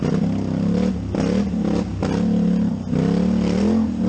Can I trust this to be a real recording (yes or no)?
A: yes